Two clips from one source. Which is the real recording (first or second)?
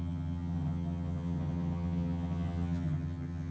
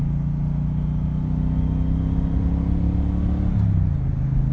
second